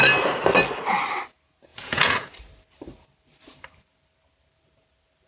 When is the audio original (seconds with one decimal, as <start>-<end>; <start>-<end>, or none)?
0.0-1.7; 2.3-5.3